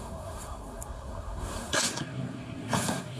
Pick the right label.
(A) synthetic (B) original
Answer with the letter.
A